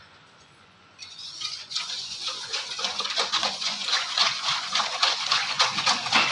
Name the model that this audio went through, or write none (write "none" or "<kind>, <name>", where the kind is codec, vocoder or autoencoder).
vocoder, Vocos